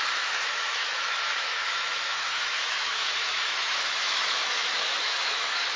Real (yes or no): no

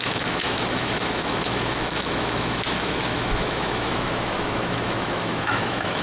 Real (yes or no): no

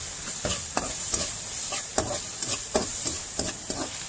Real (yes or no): yes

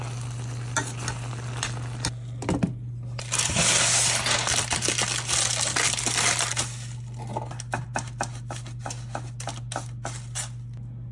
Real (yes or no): yes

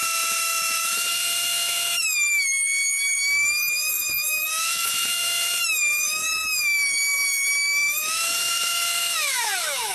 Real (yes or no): no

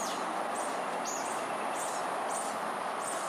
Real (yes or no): yes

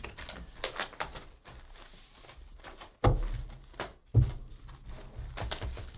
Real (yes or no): yes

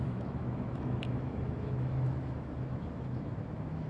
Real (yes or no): no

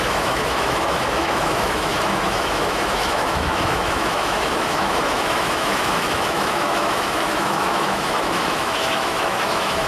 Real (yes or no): no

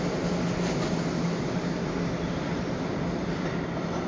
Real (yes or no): yes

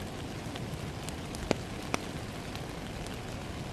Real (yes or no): yes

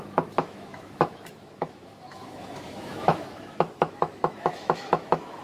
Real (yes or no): no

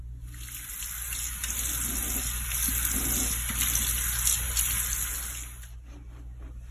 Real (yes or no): yes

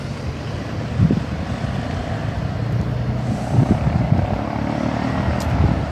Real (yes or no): yes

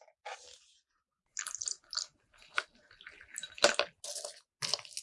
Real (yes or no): yes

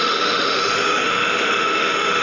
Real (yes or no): no